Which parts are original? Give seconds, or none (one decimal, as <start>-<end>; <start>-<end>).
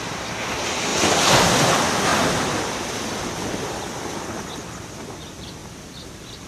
0.0-0.9; 1.5-6.5